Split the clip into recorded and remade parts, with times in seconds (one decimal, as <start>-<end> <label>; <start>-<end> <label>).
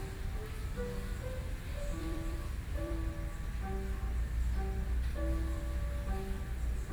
0.0-2.0 recorded; 2.0-3.1 remade; 3.1-6.9 recorded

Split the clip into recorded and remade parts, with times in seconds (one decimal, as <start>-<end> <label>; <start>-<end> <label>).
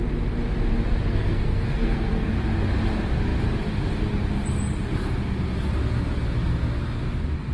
0.0-1.1 recorded; 1.1-2.3 remade; 2.3-7.5 recorded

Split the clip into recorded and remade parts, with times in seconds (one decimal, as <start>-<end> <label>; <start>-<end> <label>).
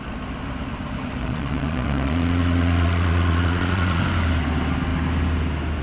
0.0-1.2 recorded; 1.2-4.0 remade; 4.0-5.8 recorded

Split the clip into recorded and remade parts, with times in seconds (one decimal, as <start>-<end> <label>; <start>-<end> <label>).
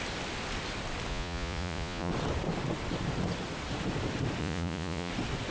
0.0-1.1 recorded; 1.1-2.1 remade; 2.1-4.4 recorded; 4.4-5.1 remade; 5.1-5.5 recorded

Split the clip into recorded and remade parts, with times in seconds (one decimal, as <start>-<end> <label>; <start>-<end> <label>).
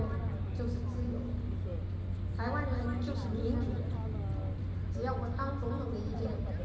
0.0-6.6 recorded